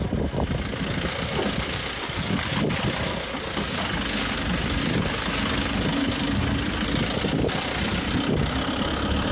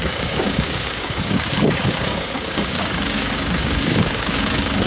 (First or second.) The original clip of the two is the first